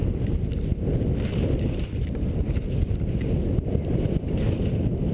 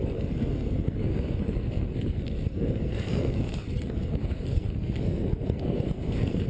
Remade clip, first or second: second